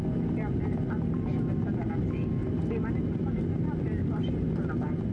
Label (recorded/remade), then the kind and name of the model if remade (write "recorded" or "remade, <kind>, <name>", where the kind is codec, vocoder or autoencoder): recorded